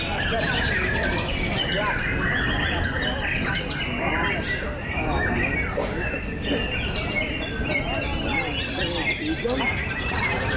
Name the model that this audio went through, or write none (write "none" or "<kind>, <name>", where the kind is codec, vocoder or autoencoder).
none